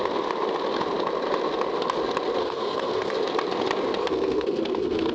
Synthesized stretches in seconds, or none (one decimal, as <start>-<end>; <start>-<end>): 2.4-3.1; 4.0-5.1